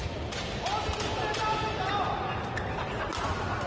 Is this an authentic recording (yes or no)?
yes